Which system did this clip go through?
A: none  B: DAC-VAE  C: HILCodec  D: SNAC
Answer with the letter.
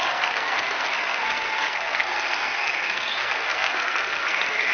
D